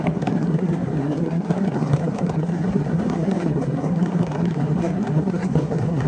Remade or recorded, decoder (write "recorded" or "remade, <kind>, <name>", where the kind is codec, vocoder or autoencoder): remade, codec, SNAC